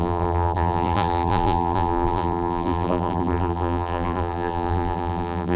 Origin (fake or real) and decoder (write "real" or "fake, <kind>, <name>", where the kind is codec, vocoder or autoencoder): fake, vocoder, BigVGAN v2